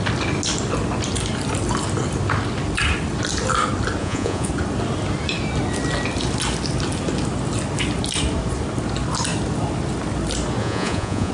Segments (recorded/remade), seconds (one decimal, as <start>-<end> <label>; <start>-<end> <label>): 0.0-4.0 recorded; 4.0-4.5 remade; 4.5-10.6 recorded; 10.6-11.3 remade